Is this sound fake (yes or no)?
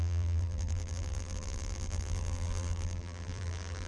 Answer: yes